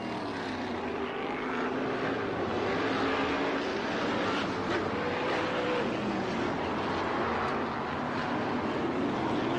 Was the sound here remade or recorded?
recorded